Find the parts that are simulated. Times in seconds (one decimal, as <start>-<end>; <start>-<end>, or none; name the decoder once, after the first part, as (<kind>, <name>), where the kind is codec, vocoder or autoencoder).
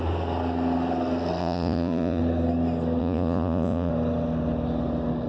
1.4-2.2 (vocoder, Vocos); 3.0-3.9